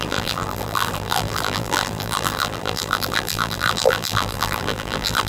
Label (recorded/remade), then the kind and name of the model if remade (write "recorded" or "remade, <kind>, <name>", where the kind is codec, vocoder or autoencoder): remade, vocoder, BigVGAN v2